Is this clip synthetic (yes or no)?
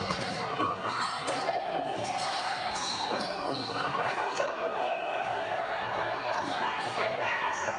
yes